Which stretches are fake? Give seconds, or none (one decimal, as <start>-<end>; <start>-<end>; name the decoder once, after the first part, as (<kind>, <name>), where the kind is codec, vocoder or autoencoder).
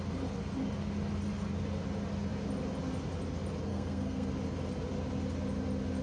3.7-4.3 (codec, SNAC)